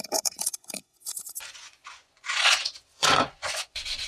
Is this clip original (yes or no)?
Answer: no